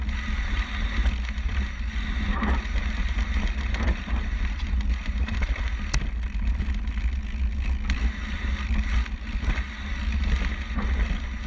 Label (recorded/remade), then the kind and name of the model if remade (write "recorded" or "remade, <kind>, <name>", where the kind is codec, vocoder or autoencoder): recorded